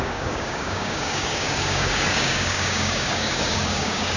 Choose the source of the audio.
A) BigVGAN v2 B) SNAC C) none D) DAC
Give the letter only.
D